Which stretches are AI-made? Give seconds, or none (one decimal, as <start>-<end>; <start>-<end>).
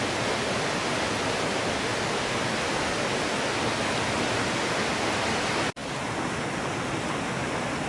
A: none